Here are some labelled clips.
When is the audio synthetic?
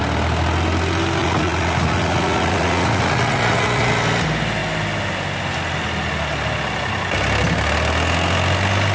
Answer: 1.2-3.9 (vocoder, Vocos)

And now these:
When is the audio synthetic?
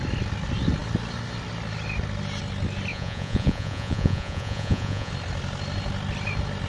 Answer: 2.9-5.1 (vocoder, Vocos)